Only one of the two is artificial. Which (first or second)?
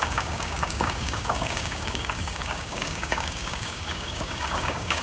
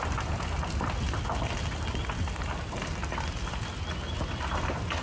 first